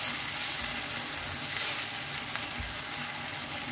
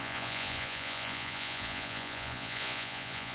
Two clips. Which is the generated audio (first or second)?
second